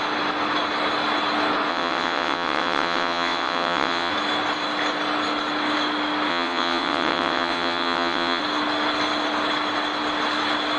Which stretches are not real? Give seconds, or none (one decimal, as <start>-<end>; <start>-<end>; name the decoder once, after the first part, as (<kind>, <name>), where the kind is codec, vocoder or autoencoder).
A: 1.7-4.1 (vocoder, WaveNeXt); 6.3-8.4